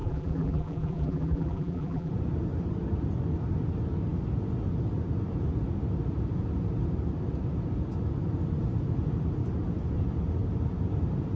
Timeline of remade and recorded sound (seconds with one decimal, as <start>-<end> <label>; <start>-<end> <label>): 0.0-2.1 remade; 2.1-11.4 recorded

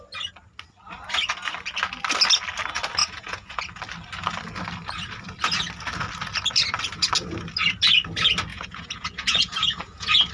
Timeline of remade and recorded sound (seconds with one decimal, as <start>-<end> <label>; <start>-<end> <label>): 0.0-3.0 recorded; 3.0-3.6 remade; 3.6-8.5 recorded; 8.5-10.3 remade

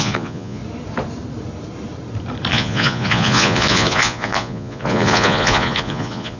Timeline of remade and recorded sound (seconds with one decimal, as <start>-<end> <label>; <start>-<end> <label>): 0.0-0.6 remade; 0.6-2.5 recorded; 2.5-6.4 remade

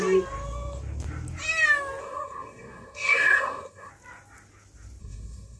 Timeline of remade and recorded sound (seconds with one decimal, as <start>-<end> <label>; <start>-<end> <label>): 0.0-2.0 recorded; 2.0-3.9 remade; 3.9-5.0 recorded; 5.0-5.6 remade